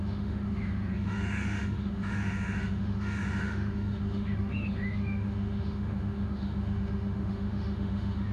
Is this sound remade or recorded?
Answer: remade